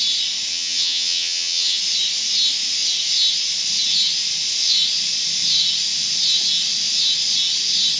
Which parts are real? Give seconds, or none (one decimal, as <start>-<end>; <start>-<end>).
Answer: 0.0-0.5; 1.8-8.0